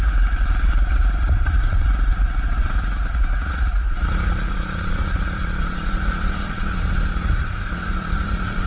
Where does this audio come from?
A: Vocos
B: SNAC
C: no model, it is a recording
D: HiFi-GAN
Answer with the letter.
A